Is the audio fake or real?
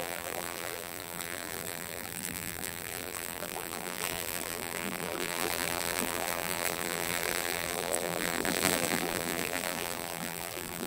fake